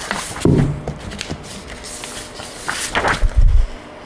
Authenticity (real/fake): real